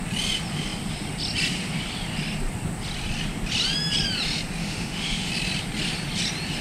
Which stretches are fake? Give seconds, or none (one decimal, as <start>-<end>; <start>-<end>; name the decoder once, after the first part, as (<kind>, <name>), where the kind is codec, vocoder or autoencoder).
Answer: 4.6-5.3 (autoencoder, DAC-VAE)